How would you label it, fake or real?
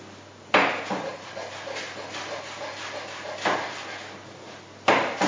real